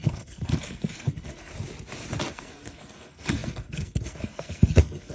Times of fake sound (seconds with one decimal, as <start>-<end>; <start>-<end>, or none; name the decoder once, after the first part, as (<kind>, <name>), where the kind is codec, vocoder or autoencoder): 0.0-1.5 (codec, SNAC); 2.3-5.1